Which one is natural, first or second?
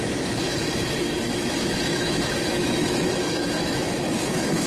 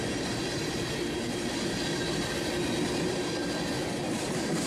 second